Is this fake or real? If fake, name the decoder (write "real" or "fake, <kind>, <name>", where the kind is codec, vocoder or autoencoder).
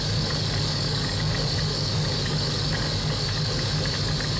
fake, codec, DAC